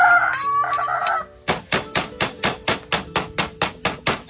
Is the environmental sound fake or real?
real